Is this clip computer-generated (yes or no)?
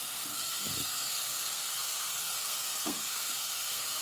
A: yes